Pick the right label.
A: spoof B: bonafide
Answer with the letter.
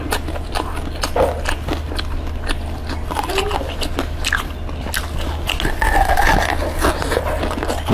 B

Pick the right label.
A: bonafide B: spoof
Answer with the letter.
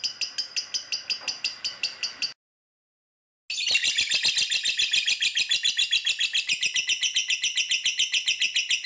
A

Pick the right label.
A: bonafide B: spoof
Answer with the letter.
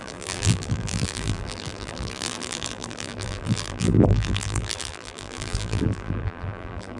B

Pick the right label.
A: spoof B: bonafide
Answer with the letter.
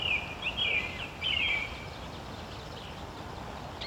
A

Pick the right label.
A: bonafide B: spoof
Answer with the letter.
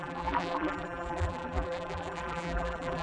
B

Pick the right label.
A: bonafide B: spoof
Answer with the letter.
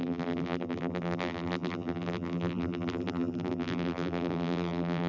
B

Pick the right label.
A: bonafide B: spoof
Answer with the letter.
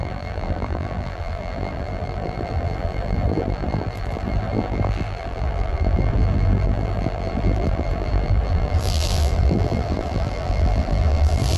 B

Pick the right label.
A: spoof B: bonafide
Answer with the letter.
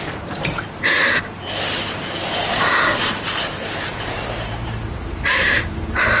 A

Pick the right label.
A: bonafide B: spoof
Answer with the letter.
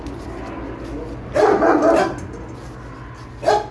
A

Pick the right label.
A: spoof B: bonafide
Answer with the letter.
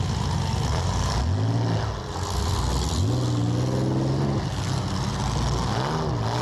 B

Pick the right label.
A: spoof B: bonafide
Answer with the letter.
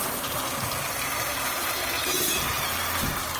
A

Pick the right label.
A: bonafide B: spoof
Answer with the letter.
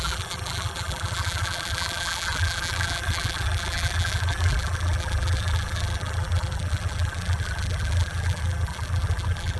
B